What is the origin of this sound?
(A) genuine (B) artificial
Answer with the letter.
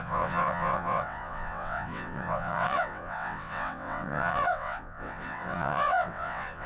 B